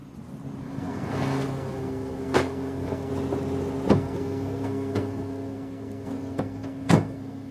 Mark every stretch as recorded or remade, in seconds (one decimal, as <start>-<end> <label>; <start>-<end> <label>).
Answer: 0.0-0.6 recorded; 0.6-3.1 remade; 3.1-3.9 recorded; 3.9-7.5 remade